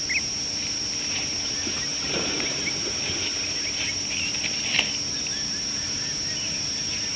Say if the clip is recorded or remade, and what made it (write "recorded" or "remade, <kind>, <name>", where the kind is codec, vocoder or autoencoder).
recorded